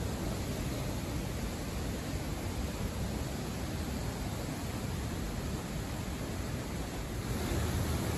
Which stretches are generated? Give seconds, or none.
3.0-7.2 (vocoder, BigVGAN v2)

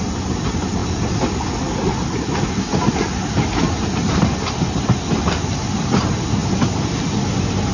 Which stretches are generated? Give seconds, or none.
none

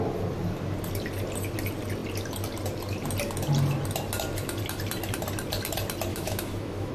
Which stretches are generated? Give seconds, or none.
6.1-6.9 (autoencoder, DAC-VAE)

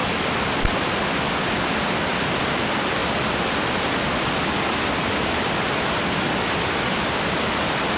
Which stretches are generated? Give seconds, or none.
none